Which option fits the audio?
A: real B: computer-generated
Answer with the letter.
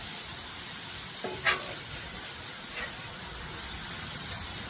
A